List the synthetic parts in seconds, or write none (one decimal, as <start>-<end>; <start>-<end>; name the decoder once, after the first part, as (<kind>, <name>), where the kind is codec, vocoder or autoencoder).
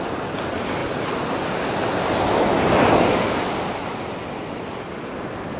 none